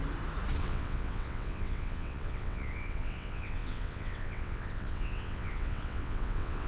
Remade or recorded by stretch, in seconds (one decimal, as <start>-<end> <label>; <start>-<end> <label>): 0.0-0.6 recorded; 0.6-6.7 remade